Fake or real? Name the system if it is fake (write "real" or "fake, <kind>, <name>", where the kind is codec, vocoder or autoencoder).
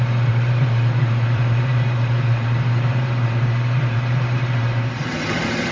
fake, vocoder, BigVGAN v2